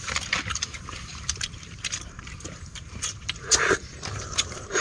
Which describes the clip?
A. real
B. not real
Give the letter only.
B